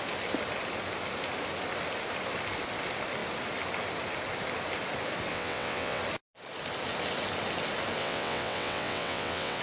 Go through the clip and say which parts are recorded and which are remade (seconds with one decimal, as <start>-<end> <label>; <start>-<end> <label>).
0.0-5.3 recorded; 5.3-6.0 remade; 6.0-8.0 recorded; 8.0-9.6 remade